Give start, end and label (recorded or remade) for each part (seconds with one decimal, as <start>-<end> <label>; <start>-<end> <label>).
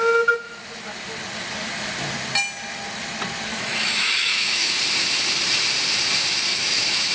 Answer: 0.0-3.5 recorded; 3.5-4.7 remade; 4.7-6.5 recorded; 6.5-7.1 remade